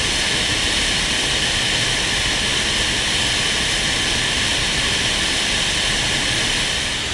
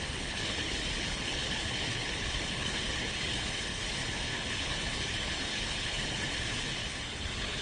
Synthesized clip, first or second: second